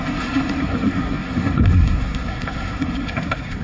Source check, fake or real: fake